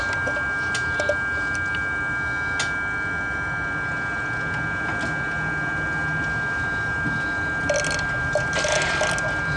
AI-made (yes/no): no